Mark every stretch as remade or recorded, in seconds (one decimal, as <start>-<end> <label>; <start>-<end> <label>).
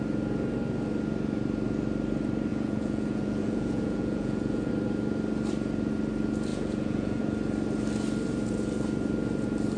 0.0-2.5 recorded; 2.5-4.7 remade; 4.7-6.5 recorded; 6.5-7.2 remade; 7.2-9.8 recorded